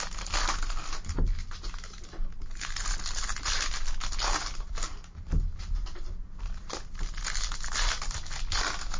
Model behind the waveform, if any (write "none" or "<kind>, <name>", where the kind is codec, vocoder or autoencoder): none